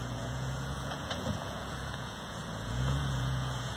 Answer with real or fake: fake